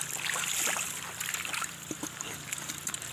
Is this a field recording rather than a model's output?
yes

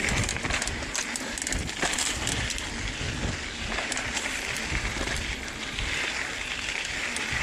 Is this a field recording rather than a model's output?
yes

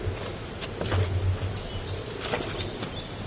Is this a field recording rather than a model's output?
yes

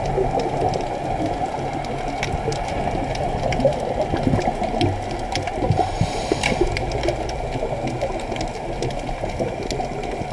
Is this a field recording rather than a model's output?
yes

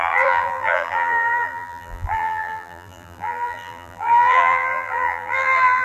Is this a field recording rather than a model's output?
no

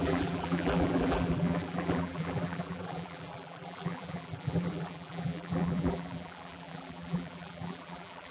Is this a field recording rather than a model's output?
no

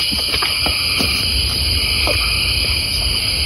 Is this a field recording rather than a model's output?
yes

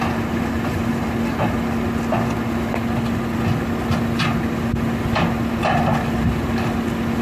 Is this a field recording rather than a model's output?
yes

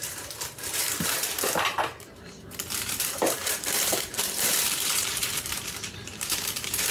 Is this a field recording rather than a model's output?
no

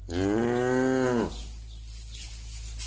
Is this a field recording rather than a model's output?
yes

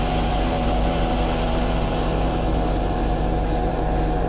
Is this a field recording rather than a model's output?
no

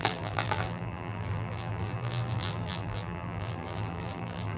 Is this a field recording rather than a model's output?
no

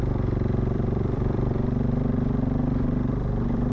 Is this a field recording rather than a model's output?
no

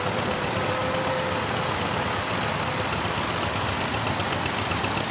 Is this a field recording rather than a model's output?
yes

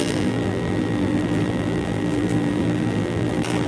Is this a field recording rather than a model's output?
no